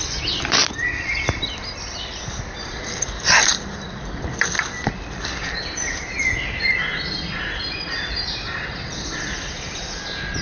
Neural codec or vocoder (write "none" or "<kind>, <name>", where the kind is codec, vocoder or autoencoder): vocoder, BigVGAN v2